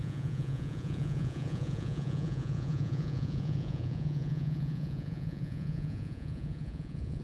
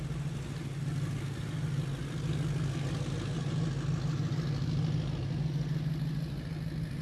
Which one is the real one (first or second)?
second